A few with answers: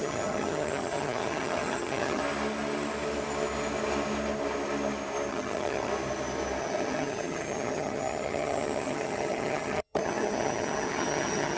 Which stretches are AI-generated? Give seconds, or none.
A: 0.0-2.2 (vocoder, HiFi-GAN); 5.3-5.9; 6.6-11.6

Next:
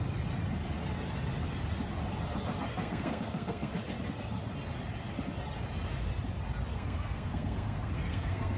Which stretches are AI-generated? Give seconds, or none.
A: 2.7-3.7 (codec, SNAC); 6.7-8.6

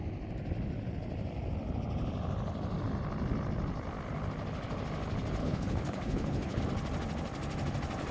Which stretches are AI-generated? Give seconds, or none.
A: 5.4-6.6 (codec, HILCodec)